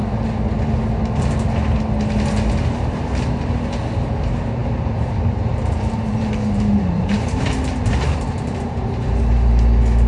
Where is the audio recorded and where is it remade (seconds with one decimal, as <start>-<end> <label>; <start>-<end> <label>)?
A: 0.0-4.6 recorded; 4.6-9.2 remade; 9.2-10.1 recorded